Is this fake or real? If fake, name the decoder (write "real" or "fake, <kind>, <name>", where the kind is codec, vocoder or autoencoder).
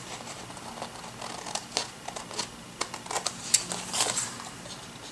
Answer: real